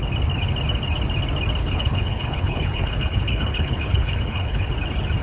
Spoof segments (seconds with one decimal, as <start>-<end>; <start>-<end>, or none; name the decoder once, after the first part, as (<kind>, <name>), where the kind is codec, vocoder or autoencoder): 1.6-4.7 (codec, HILCodec)